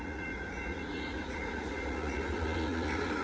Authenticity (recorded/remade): remade